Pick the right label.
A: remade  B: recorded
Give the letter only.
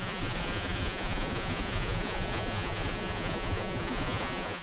A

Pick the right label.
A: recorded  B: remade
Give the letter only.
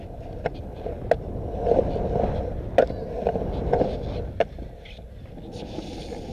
A